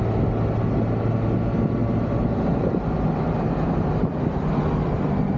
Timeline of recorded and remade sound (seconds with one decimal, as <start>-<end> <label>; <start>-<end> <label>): 0.0-1.8 recorded; 1.8-5.0 remade; 5.0-5.4 recorded